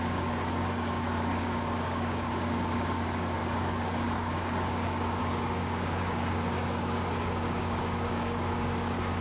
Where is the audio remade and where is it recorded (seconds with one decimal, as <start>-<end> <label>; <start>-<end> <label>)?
0.0-9.2 remade